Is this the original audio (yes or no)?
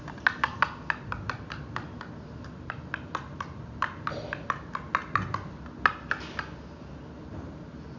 yes